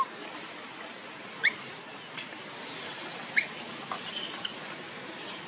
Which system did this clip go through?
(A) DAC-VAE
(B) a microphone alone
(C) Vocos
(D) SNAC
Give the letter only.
B